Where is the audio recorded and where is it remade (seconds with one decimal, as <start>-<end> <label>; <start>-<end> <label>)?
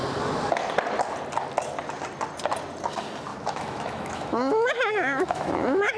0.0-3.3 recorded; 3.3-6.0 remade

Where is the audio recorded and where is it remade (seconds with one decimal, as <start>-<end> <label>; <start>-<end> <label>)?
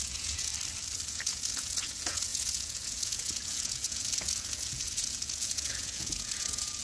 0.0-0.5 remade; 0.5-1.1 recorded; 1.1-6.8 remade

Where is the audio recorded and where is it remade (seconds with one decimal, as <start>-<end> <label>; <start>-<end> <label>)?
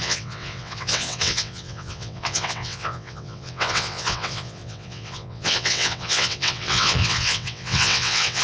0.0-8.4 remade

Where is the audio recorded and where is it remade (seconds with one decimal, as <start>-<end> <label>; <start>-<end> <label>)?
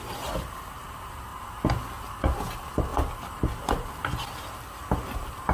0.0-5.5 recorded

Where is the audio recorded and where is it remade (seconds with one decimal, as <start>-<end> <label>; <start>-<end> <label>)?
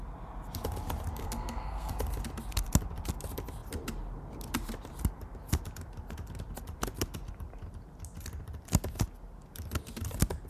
0.0-1.2 recorded; 1.2-1.9 remade; 1.9-10.5 recorded